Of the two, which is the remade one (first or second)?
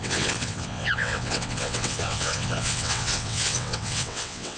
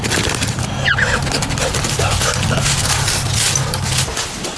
first